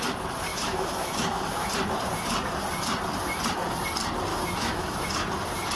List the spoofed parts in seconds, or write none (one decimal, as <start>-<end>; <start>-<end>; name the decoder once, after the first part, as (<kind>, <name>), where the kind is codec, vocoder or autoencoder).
0.5-1.7 (autoencoder, DAC-VAE); 4.3-5.1